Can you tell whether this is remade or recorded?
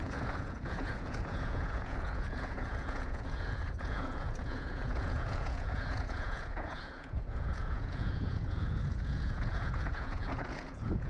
remade